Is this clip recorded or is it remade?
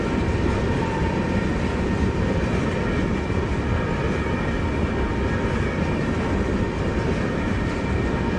recorded